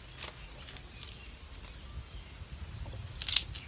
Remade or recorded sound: recorded